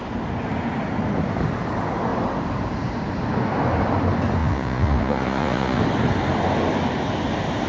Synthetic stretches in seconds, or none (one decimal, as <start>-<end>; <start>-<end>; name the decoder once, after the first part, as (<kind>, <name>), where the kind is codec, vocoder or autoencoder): 4.4-5.8 (vocoder, Vocos)